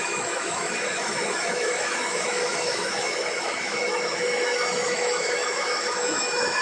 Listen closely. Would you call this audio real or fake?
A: fake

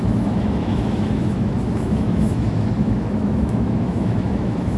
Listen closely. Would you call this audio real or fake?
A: fake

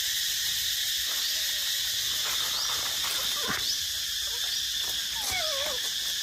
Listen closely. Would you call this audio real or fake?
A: real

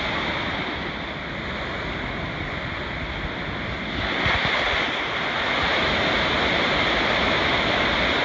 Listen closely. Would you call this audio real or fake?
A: real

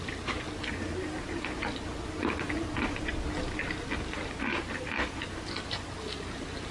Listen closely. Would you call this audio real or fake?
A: real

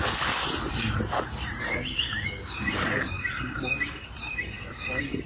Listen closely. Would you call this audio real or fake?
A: real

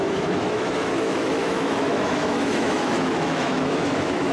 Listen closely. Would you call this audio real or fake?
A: fake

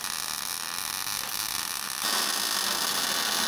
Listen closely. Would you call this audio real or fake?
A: real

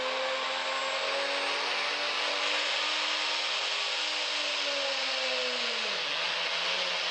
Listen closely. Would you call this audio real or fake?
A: real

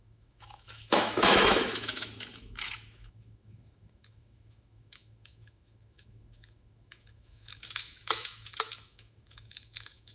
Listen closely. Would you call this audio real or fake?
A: fake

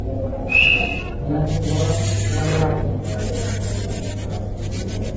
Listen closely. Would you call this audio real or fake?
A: real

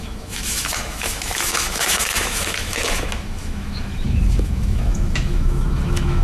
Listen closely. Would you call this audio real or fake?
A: fake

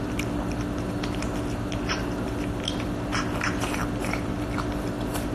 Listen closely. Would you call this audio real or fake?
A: real